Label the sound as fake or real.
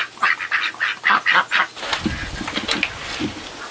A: real